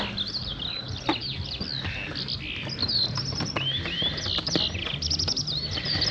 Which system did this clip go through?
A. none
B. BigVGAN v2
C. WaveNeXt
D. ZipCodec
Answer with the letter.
A